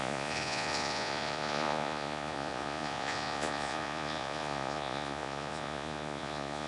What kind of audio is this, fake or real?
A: fake